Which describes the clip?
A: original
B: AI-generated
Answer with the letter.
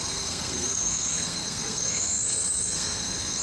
B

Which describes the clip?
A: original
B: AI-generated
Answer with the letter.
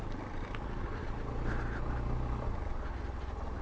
A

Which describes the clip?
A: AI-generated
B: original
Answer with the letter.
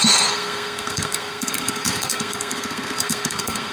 A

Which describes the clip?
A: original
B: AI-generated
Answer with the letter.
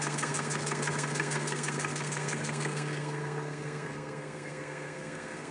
B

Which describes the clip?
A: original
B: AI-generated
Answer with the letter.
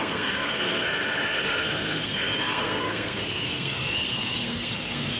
B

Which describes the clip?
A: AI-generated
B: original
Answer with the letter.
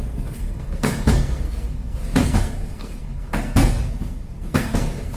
A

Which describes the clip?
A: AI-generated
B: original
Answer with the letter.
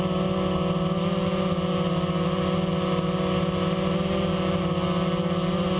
B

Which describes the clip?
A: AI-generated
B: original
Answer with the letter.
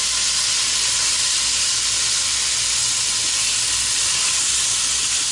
B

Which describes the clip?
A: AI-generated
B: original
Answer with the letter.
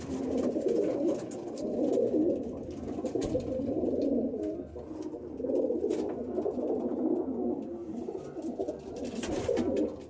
B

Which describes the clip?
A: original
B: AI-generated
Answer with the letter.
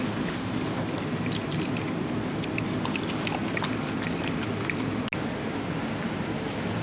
A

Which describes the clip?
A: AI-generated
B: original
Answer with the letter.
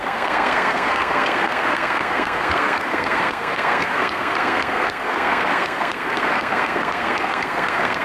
A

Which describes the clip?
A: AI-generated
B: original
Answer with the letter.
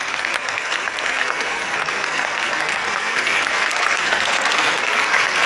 A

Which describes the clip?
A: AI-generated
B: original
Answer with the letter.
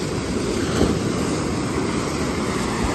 B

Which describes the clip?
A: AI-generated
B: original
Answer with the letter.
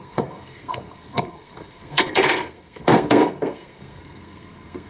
A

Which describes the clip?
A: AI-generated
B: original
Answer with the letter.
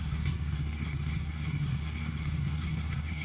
A